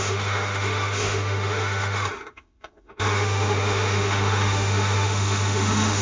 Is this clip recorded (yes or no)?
no